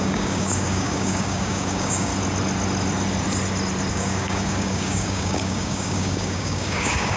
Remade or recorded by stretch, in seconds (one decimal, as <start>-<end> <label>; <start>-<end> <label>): 0.0-2.1 remade; 2.1-3.9 recorded; 3.9-7.2 remade